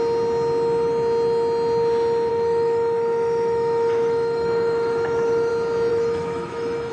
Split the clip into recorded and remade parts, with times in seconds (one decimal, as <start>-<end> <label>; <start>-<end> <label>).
0.0-2.3 recorded; 2.3-5.5 remade; 5.5-5.9 recorded; 5.9-6.9 remade